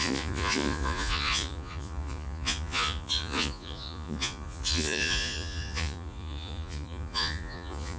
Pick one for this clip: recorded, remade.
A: remade